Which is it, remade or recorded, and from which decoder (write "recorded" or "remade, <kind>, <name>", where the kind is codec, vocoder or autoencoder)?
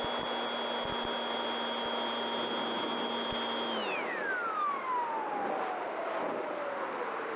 recorded